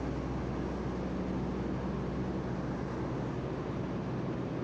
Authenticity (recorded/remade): recorded